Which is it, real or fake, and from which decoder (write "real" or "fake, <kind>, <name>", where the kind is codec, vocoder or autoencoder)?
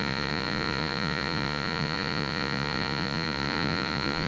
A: fake, vocoder, Vocos